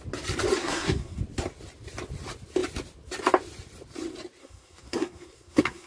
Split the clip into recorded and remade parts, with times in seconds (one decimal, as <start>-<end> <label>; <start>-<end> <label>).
0.0-0.6 recorded; 0.6-1.2 remade; 1.2-4.4 recorded; 4.4-5.9 remade

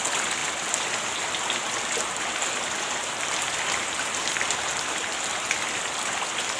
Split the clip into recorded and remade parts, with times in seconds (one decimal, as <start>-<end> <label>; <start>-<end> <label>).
0.0-6.6 recorded

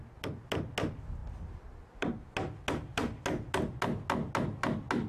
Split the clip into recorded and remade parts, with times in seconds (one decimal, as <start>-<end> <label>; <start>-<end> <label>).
0.0-5.1 recorded

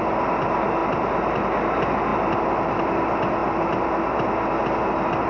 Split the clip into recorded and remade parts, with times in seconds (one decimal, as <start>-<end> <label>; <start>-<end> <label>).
0.0-5.3 recorded

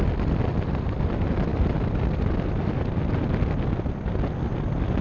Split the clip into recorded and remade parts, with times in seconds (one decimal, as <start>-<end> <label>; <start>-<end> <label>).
0.0-5.0 recorded

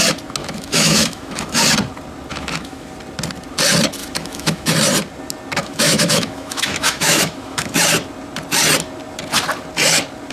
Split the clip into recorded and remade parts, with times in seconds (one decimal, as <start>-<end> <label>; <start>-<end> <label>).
0.0-0.4 recorded; 0.4-1.6 remade; 1.6-2.3 recorded; 2.3-2.9 remade; 2.9-4.0 recorded; 4.0-4.7 remade; 4.7-5.6 recorded; 5.6-7.8 remade; 7.8-10.3 recorded

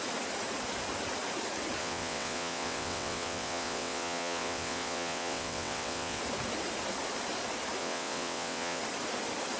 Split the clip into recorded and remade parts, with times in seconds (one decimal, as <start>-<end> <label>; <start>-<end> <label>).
0.0-1.8 recorded; 1.8-6.2 remade; 6.2-7.8 recorded; 7.8-8.8 remade; 8.8-9.6 recorded